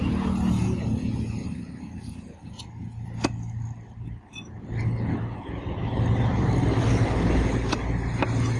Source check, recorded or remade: recorded